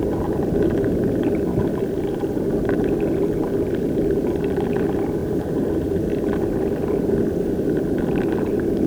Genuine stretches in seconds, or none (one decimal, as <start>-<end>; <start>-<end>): 0.0-5.2; 6.1-8.9